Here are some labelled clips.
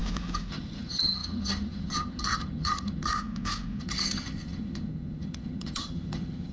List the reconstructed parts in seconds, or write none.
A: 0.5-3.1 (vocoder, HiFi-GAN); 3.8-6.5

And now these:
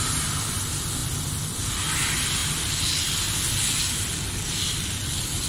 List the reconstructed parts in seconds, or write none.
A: none

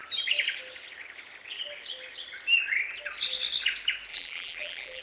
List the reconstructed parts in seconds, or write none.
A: 4.1-5.0 (vocoder, BigVGAN v2)

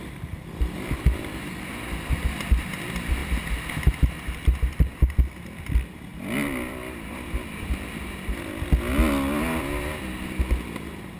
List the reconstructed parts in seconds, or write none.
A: none

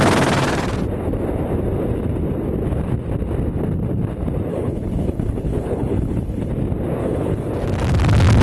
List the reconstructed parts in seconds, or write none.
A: 4.5-6.5 (codec, HILCodec); 7.0-7.5

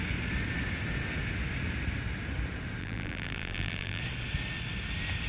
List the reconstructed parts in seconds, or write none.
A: 2.8-4.0 (vocoder, BigVGAN v2)

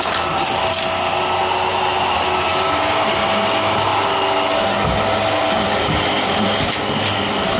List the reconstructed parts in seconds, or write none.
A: none